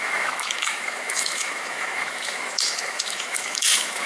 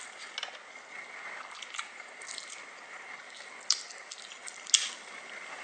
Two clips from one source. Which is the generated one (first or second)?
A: first